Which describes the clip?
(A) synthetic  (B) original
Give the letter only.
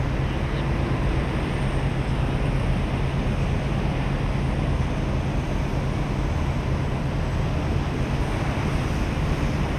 B